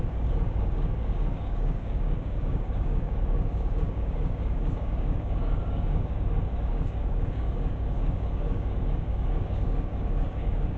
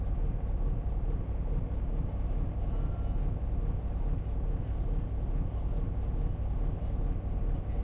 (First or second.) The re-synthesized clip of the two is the first